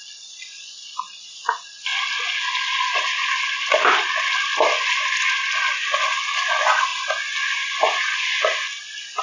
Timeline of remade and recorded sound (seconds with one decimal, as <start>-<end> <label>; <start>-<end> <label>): 0.0-9.2 recorded